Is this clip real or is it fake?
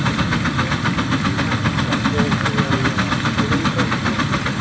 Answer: real